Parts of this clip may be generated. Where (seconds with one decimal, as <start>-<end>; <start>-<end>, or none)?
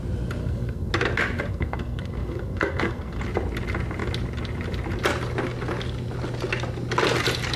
0.4-0.9; 1.5-3.2